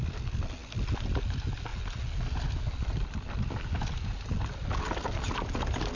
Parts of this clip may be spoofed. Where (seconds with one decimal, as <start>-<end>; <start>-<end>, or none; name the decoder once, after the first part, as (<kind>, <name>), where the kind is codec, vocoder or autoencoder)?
none